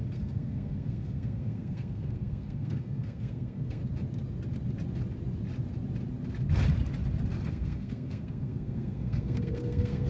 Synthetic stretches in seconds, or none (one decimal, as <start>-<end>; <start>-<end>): 0.0-3.8; 7.5-10.1